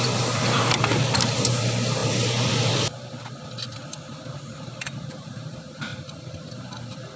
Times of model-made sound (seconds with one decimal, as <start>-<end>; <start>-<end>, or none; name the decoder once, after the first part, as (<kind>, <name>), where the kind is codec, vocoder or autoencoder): 0.0-3.8 (vocoder, BigVGAN v2); 4.3-5.9